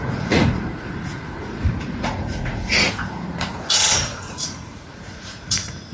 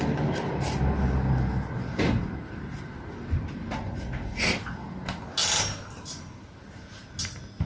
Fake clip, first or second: first